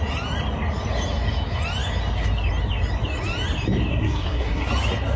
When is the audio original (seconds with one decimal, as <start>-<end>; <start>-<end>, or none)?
0.0-3.9; 4.7-5.2